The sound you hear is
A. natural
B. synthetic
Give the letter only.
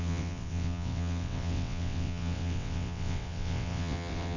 B